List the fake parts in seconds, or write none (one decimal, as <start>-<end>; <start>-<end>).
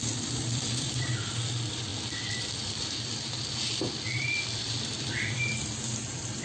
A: 0.0-6.4